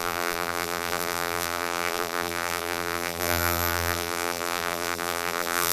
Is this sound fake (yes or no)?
yes